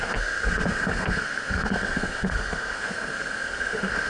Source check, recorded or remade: remade